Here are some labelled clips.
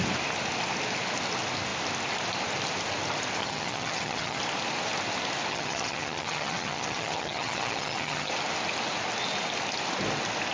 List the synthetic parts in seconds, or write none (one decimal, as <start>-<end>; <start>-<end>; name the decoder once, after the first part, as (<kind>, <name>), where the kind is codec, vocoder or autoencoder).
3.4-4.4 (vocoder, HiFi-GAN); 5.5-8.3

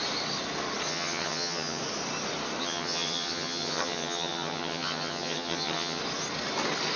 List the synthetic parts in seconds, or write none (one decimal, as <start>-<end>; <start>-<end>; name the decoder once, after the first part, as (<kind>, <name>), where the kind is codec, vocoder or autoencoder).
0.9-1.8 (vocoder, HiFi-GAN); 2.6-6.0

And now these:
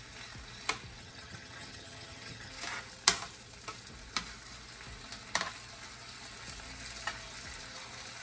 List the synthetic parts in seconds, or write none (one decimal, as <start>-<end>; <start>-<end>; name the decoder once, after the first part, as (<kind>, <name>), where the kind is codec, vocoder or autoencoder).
1.0-2.5 (vocoder, HiFi-GAN)

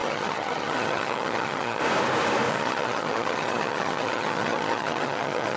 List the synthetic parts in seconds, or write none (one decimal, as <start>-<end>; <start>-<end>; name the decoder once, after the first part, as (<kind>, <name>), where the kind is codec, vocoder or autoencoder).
0.0-1.8 (vocoder, HiFi-GAN); 2.5-5.6

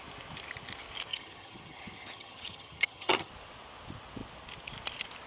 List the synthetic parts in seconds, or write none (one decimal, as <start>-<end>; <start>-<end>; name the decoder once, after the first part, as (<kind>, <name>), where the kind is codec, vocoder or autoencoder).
1.1-3.3 (vocoder, HiFi-GAN)